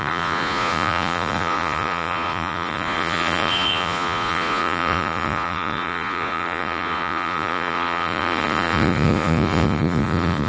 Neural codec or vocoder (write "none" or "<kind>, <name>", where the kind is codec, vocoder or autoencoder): vocoder, Vocos